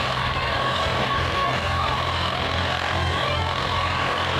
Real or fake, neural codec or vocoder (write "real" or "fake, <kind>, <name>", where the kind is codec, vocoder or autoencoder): fake, codec, DAC